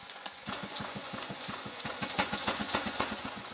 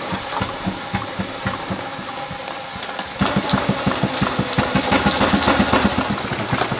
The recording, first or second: second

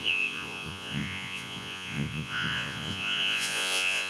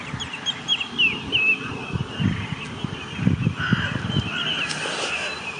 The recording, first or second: second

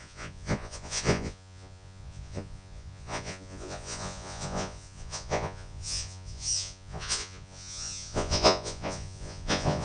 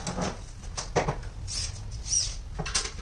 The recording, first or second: second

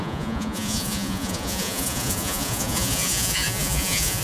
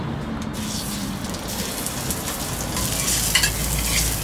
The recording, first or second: second